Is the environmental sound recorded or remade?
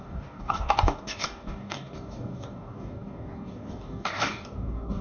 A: remade